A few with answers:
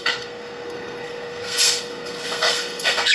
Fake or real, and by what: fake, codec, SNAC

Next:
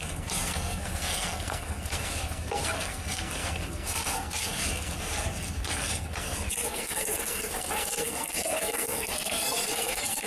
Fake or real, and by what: fake, codec, SNAC